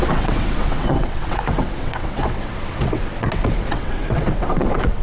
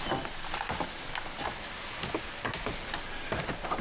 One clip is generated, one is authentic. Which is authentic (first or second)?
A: second